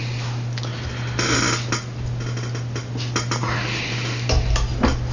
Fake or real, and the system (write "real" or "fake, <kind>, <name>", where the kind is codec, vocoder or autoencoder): real